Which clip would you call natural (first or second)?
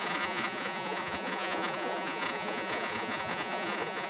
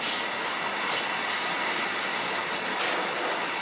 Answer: second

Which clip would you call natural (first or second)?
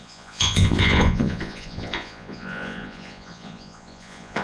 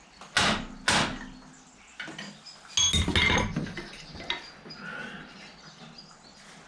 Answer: second